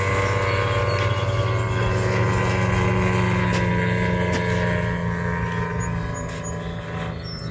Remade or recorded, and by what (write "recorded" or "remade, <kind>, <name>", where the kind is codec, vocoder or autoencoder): recorded